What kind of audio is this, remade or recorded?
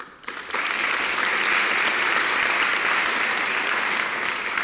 recorded